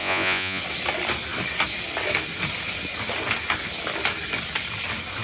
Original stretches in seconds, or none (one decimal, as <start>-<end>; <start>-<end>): 0.6-5.2